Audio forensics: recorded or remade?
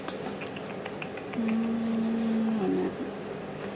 recorded